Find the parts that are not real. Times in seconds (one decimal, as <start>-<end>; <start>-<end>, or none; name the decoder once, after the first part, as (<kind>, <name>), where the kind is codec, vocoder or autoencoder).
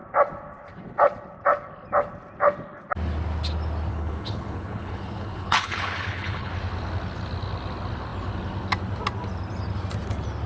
3.9-6.5 (codec, HILCodec)